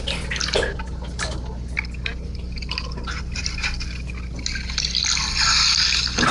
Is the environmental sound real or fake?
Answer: real